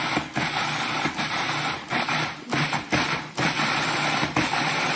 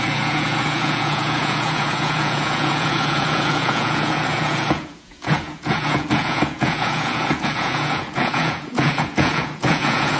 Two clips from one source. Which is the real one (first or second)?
first